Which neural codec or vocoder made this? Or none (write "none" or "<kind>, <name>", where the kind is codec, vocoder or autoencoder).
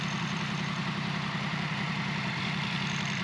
vocoder, BigVGAN v2